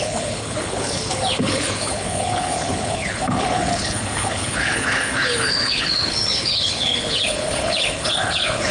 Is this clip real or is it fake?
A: fake